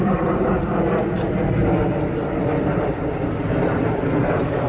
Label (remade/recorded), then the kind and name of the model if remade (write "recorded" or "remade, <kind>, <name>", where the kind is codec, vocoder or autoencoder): recorded